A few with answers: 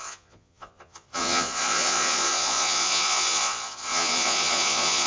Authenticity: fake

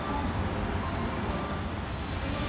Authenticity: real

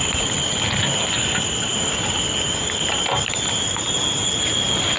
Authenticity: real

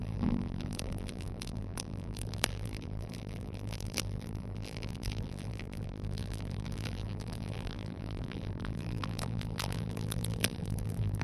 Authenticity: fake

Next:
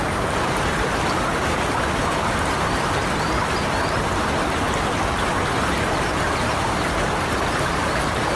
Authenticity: real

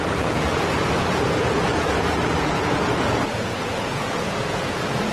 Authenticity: fake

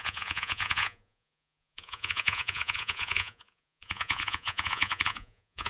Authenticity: fake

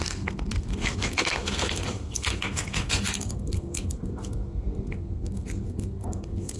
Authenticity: fake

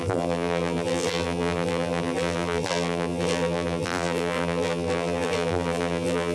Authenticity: fake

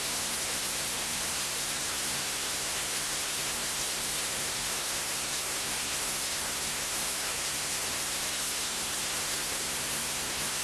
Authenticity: fake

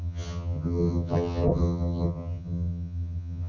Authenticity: fake